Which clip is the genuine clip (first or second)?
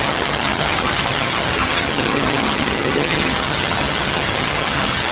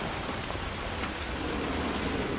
second